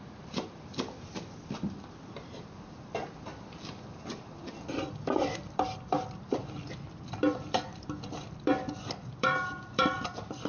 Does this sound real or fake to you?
fake